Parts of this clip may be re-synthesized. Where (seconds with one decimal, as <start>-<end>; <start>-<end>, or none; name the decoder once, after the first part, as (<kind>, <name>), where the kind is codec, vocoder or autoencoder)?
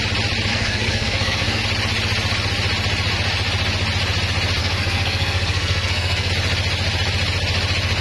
0.5-1.6 (codec, SNAC); 4.6-6.3